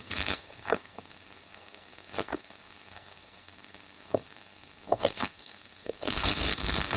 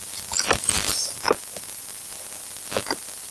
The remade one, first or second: first